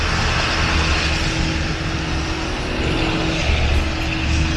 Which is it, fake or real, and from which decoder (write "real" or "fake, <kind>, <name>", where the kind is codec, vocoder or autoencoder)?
real